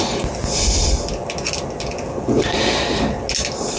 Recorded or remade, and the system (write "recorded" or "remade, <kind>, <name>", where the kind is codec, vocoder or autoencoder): recorded